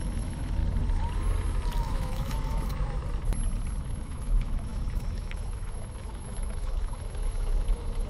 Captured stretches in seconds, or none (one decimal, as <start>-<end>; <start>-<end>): 0.6-1.8; 3.0-3.8